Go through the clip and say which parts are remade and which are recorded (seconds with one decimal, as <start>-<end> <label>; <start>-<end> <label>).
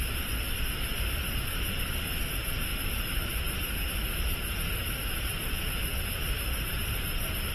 0.0-2.7 recorded; 2.7-7.5 remade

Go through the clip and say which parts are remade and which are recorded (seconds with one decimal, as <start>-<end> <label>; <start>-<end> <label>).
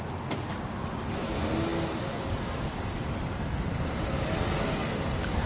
0.0-5.5 recorded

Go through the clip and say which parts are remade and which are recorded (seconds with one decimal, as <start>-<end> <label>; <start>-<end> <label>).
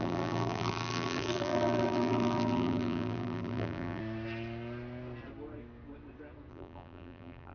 0.0-4.0 remade; 4.0-6.5 recorded; 6.5-7.5 remade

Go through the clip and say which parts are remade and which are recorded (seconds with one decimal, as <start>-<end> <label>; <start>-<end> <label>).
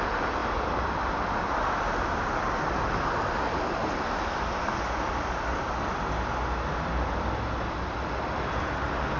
0.0-0.4 recorded; 0.4-2.7 remade; 2.7-9.2 recorded